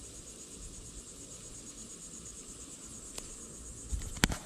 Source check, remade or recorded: recorded